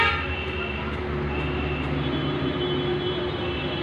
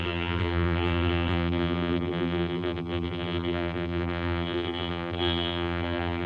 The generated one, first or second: second